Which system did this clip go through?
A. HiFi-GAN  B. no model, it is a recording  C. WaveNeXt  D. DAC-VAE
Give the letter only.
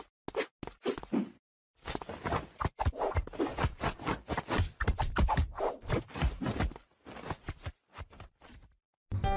B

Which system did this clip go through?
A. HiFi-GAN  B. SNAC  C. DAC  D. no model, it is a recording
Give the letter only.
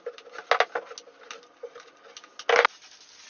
D